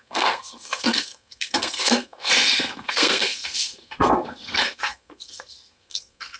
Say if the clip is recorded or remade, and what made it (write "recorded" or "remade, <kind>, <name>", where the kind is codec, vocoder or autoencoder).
remade, codec, SNAC